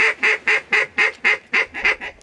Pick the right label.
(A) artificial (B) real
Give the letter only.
B